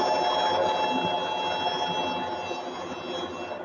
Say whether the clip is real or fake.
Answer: real